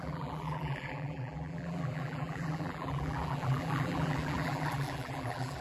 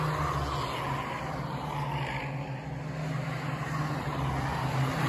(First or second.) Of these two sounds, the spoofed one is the first